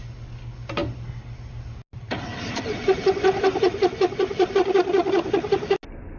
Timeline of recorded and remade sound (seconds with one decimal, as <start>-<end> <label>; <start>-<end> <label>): 0.0-6.2 recorded